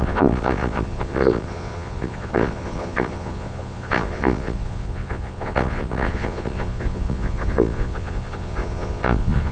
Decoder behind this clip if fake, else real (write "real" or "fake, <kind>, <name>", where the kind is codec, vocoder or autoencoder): fake, vocoder, Vocos